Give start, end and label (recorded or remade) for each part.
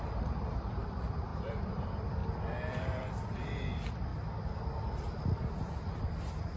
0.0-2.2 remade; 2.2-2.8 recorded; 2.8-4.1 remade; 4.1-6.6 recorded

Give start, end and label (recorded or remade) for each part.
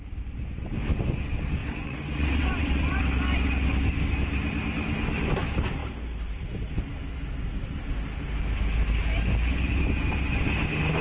0.0-1.6 recorded; 1.6-3.0 remade; 3.0-11.0 recorded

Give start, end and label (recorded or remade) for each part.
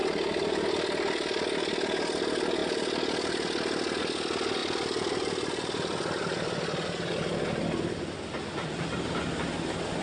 0.0-10.0 recorded